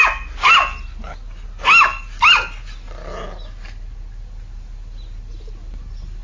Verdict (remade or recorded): recorded